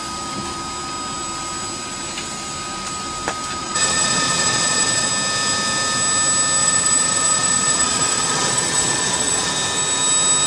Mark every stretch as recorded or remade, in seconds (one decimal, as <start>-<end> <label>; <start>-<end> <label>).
0.0-3.6 recorded; 3.6-5.1 remade; 5.1-6.6 recorded; 6.6-9.5 remade; 9.5-10.5 recorded